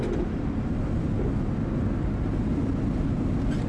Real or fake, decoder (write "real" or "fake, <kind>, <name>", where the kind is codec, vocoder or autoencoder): real